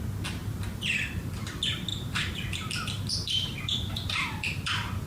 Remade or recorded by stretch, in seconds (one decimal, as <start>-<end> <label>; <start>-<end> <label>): 0.0-0.4 recorded; 0.4-1.4 remade; 1.4-1.9 recorded; 1.9-5.1 remade